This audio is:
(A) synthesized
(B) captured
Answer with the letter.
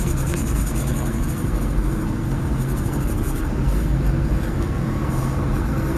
A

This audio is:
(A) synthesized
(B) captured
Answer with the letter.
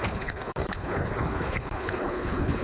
A